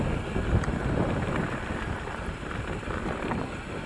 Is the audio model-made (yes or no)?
no